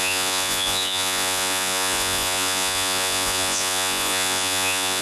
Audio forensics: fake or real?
fake